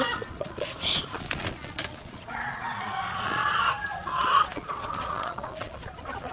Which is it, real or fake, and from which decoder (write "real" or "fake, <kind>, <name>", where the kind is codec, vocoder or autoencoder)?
fake, vocoder, Vocos